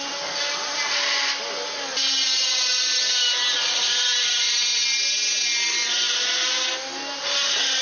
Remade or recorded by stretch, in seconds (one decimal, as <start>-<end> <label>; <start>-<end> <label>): 0.0-7.8 recorded